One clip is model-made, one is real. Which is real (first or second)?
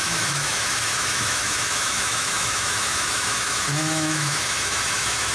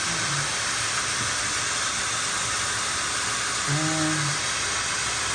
second